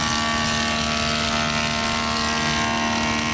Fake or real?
real